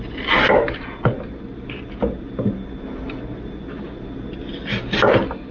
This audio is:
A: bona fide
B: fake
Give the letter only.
A